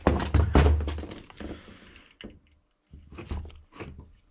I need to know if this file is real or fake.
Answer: real